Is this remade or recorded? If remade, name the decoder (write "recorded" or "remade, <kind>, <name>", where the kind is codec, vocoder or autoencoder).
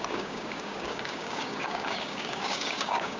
remade, codec, DAC